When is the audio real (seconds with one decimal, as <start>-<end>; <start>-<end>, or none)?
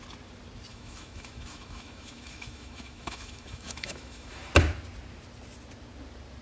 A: 0.0-0.7; 4.5-6.4